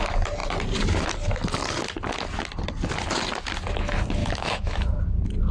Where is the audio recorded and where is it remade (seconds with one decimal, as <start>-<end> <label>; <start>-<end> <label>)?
0.0-4.2 recorded; 4.2-5.0 remade; 5.0-5.5 recorded